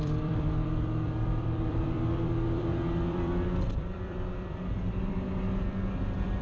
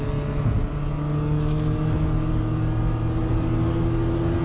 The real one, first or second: second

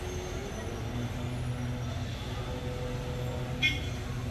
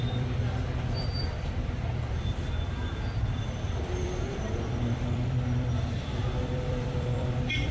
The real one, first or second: first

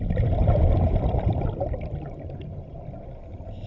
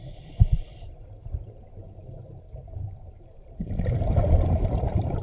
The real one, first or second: first